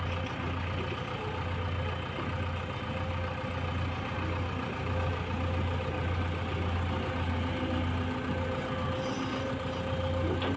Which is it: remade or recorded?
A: recorded